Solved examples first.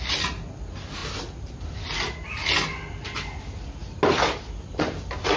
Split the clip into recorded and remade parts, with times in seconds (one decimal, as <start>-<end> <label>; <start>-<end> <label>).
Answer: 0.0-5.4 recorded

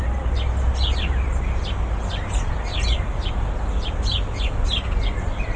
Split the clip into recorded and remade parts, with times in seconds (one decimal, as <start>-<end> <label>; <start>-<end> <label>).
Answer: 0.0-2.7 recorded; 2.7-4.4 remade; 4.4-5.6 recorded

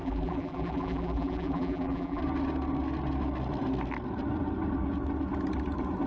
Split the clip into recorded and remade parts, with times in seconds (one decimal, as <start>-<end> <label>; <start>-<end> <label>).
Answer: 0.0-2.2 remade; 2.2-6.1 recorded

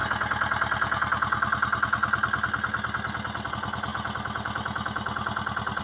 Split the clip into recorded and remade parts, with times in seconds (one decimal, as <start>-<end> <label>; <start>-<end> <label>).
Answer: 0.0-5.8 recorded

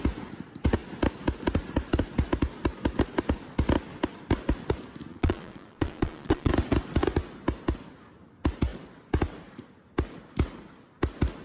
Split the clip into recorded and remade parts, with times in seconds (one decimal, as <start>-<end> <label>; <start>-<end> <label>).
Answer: 0.0-5.1 recorded; 5.1-6.5 remade; 6.5-11.4 recorded

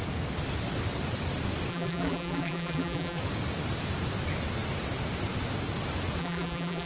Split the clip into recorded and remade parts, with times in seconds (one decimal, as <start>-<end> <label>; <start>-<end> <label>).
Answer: 0.0-1.7 recorded; 1.7-3.2 remade; 3.2-6.2 recorded; 6.2-6.9 remade

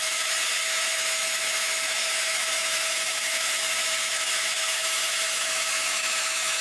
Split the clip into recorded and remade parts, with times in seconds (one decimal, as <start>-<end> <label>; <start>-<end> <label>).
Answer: 0.0-6.6 remade

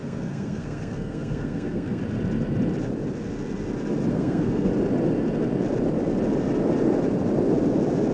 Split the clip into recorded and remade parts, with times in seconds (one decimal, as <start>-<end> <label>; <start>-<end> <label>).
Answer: 0.0-2.0 remade; 2.0-4.1 recorded; 4.1-4.7 remade; 4.7-8.1 recorded